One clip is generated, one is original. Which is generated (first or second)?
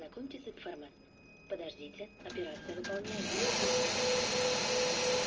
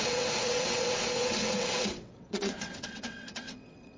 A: second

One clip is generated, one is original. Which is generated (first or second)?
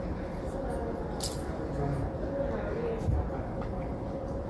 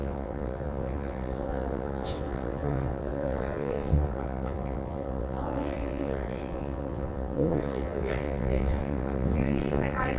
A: second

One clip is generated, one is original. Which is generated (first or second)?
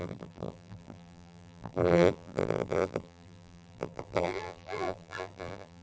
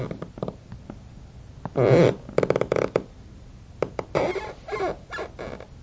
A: first